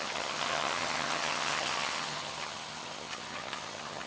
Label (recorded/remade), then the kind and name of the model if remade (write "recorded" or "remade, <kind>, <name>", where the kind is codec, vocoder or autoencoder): remade, vocoder, HiFi-GAN